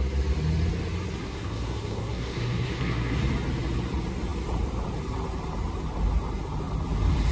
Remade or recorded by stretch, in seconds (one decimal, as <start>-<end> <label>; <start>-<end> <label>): 0.0-1.2 recorded; 1.2-3.2 remade; 3.2-7.3 recorded